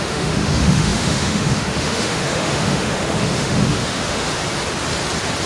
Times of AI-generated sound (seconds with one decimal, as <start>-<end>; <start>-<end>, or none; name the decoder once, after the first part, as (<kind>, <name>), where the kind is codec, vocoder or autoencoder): 0.0-4.4 (autoencoder, DAC-VAE)

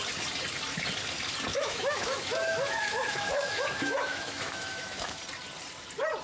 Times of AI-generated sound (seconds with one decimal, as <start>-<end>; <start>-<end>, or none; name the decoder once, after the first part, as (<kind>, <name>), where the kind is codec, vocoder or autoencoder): 1.5-5.2 (autoencoder, DAC-VAE)

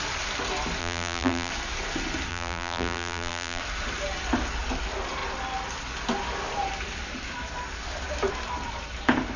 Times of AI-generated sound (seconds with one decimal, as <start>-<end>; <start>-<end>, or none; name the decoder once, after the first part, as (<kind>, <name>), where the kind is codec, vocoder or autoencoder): 0.8-1.5 (vocoder, BigVGAN v2); 2.3-3.6

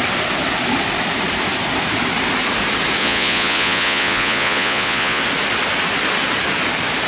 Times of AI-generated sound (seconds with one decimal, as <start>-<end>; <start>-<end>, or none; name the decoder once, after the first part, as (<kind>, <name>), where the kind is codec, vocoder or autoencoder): 3.0-5.2 (vocoder, Vocos)

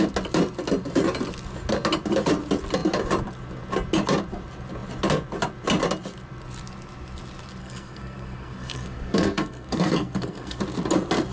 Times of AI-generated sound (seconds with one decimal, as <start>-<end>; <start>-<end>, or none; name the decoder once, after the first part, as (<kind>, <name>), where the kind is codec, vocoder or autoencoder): 7.6-10.6 (codec, SNAC)

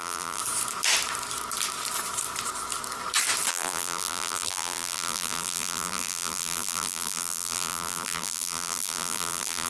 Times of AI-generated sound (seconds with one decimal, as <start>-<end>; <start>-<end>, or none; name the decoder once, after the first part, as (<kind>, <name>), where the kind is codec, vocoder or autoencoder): 0.0-0.4 (vocoder, BigVGAN v2); 3.5-9.7

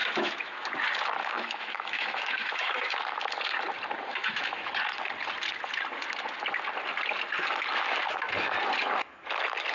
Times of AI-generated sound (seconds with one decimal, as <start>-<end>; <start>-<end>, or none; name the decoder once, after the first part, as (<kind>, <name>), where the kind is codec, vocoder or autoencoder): 0.0-0.7 (autoencoder, DAC-VAE); 1.2-3.0; 4.1-4.7